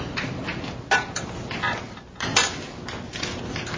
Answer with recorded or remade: recorded